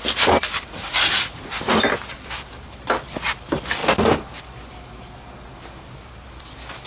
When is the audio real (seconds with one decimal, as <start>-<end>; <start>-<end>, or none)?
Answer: 0.0-0.4; 1.8-6.9